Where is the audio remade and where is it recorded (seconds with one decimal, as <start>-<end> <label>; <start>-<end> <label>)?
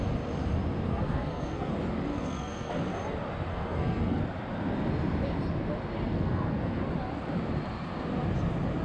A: 0.0-0.9 recorded; 0.9-1.7 remade; 1.7-2.1 recorded; 2.1-2.7 remade; 2.7-3.5 recorded; 3.5-4.2 remade; 4.2-6.1 recorded; 6.1-6.8 remade; 6.8-8.8 recorded